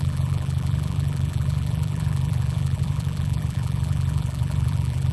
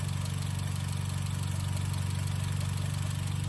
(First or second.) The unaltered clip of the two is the second